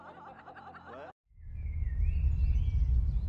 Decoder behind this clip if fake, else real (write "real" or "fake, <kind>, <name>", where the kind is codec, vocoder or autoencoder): real